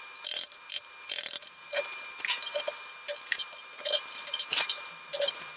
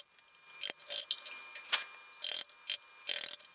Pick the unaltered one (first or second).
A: second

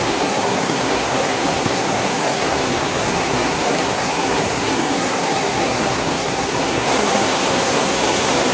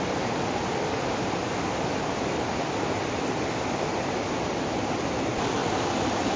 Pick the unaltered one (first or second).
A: second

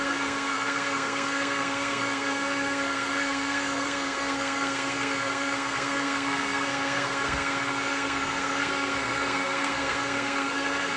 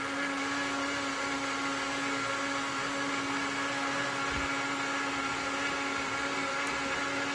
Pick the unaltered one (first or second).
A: second